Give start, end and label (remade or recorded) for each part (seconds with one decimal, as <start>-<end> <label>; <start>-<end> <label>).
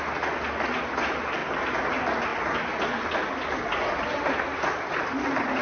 0.0-5.6 recorded